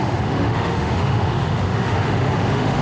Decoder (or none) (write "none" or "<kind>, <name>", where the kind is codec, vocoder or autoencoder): autoencoder, DAC-VAE